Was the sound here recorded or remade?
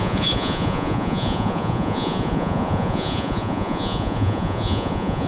remade